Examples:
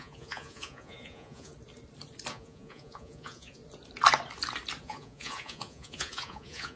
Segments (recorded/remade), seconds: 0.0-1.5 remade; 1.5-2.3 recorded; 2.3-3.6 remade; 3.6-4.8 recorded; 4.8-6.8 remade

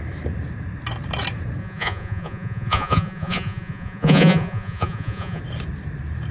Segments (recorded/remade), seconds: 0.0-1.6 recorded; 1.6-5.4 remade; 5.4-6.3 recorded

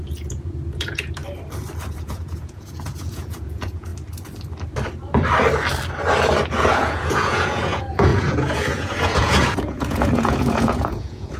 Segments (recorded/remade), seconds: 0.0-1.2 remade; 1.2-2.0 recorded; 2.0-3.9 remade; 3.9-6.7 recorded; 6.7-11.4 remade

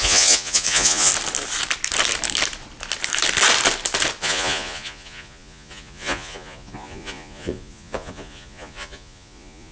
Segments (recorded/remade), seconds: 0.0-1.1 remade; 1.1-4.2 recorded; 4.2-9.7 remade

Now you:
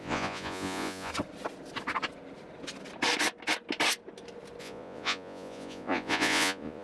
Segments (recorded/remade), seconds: 0.0-1.1 remade; 1.1-4.6 recorded; 4.6-6.8 remade